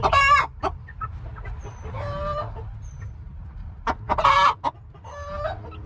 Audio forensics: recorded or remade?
recorded